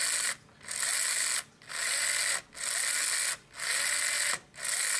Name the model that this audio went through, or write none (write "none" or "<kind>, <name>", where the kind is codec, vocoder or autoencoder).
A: none